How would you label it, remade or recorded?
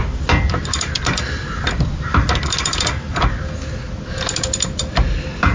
recorded